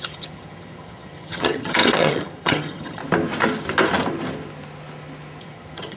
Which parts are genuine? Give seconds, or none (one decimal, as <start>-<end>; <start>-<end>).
3.0-5.4

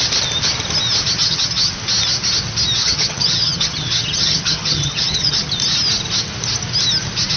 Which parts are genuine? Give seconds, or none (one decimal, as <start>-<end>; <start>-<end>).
0.0-1.2; 1.7-2.8; 5.5-7.4